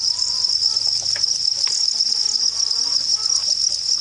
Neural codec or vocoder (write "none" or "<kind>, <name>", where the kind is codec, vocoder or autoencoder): none